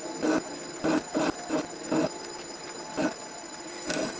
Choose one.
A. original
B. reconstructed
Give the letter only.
A